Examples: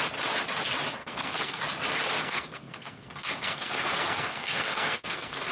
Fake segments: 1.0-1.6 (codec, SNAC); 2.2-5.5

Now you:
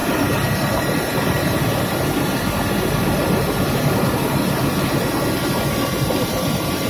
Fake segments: 0.0-1.6 (vocoder, BigVGAN v2)

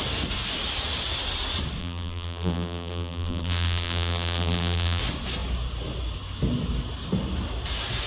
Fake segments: 1.8-5.0 (vocoder, BigVGAN v2)

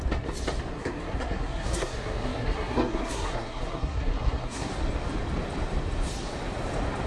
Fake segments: 0.7-4.7 (codec, SNAC)

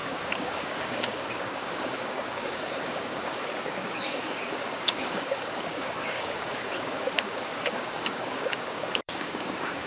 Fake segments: 0.0-9.9 (codec, DAC)